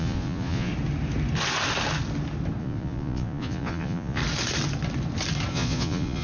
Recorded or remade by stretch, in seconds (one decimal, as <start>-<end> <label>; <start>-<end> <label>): 0.0-0.7 remade; 0.7-2.6 recorded; 2.6-4.2 remade; 4.2-5.5 recorded; 5.5-6.2 remade